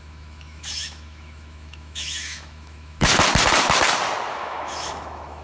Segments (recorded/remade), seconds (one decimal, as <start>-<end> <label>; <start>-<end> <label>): 0.0-3.1 remade; 3.1-4.3 recorded; 4.3-5.4 remade